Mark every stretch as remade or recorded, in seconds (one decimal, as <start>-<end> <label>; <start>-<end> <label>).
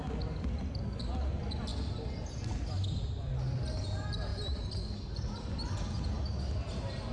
0.0-7.1 recorded